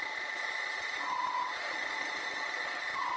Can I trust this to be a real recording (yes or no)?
no